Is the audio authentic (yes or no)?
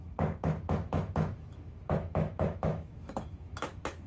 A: no